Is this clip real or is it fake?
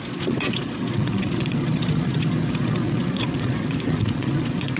fake